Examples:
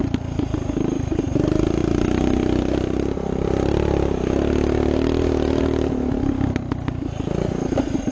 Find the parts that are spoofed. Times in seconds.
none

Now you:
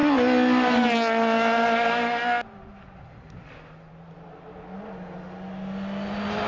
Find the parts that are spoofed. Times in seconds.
none